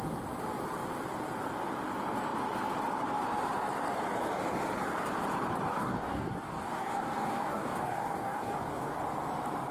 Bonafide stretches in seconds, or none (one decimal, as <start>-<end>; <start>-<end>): 0.0-5.7; 9.0-9.7